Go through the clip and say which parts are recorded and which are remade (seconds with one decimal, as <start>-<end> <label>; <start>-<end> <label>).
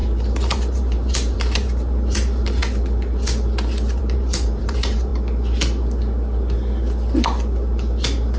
0.0-2.6 remade; 2.6-4.0 recorded; 4.0-5.1 remade; 5.1-8.4 recorded